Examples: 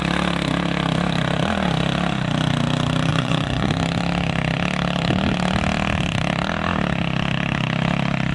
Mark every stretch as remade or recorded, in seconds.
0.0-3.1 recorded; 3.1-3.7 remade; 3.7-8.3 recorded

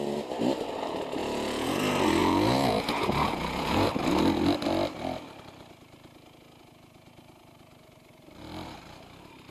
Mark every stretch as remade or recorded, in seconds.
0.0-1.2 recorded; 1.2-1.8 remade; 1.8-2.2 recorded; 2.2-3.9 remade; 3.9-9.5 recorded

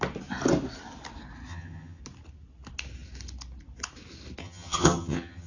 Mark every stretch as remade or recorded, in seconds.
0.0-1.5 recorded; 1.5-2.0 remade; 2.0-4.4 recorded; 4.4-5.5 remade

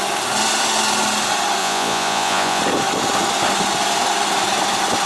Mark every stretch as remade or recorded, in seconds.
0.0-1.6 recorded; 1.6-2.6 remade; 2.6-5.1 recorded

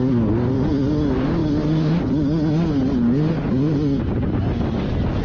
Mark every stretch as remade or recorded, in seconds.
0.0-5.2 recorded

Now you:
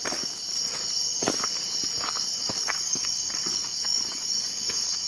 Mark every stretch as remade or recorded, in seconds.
0.0-2.4 recorded; 2.4-5.1 remade